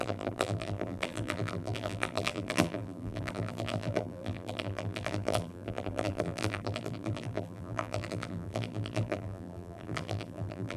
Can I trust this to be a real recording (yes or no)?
no